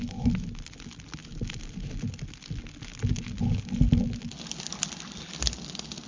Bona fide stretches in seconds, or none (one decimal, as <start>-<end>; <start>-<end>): 0.0-6.1